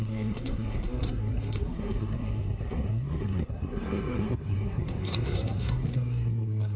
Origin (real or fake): fake